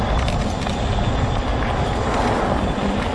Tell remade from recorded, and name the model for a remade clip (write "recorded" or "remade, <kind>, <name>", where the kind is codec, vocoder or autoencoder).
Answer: recorded